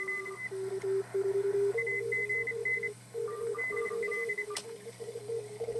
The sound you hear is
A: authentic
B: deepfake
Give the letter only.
B